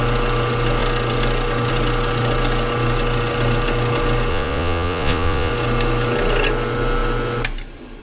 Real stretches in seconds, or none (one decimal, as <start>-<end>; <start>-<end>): 0.0-4.3; 5.5-8.0